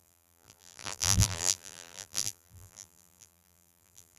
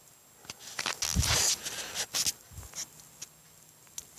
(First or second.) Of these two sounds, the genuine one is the second